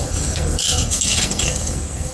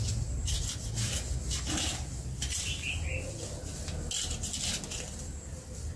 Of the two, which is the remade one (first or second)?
first